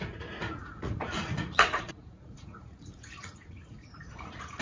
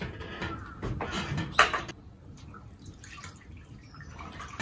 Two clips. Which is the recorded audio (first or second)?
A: second